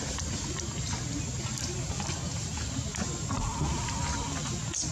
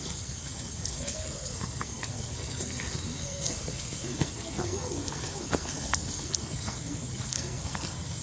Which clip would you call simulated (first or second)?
second